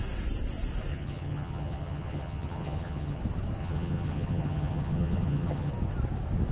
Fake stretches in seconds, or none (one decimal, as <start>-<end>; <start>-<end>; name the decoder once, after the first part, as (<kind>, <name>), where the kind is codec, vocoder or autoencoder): 0.9-3.2 (vocoder, HiFi-GAN); 3.6-5.7